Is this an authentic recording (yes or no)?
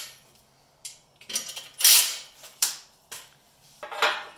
no